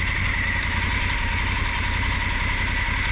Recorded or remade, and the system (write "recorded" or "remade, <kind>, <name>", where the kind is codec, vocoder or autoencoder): recorded